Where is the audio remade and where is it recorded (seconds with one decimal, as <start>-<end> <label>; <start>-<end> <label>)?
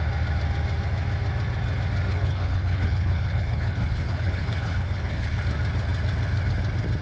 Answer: 0.0-2.1 recorded; 2.1-5.4 remade; 5.4-7.0 recorded